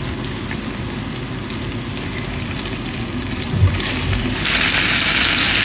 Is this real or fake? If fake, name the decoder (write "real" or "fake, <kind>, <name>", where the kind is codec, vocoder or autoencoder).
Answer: real